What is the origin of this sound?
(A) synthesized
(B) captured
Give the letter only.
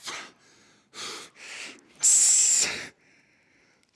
B